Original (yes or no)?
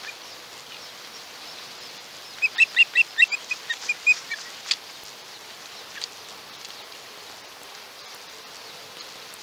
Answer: yes